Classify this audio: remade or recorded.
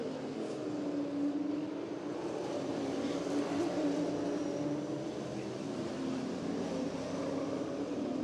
recorded